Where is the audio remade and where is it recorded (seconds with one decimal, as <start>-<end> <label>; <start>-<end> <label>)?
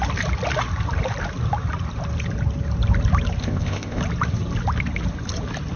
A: 0.0-3.4 recorded; 3.4-4.0 remade; 4.0-5.8 recorded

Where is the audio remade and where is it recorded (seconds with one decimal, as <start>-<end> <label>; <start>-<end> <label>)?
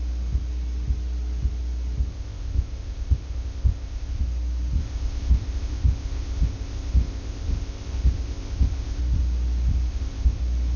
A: 0.0-2.1 recorded; 2.1-4.2 remade; 4.2-4.8 recorded; 4.8-9.0 remade; 9.0-9.9 recorded; 9.9-10.4 remade; 10.4-10.8 recorded